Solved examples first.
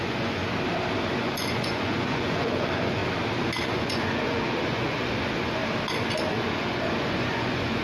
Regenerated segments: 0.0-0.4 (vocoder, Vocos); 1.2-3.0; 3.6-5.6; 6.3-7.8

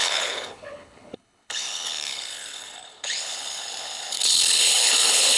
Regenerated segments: 0.0-5.4 (codec, HILCodec)